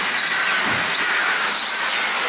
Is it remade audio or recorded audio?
recorded